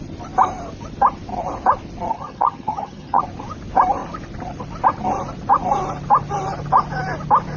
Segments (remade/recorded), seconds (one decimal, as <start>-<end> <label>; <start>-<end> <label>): 0.0-2.1 recorded; 2.1-3.2 remade; 3.2-7.6 recorded